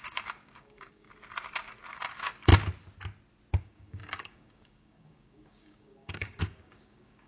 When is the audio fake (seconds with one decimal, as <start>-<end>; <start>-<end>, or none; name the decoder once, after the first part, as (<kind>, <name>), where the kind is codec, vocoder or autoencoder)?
0.0-1.1 (codec, DAC); 1.9-2.5; 3.6-7.3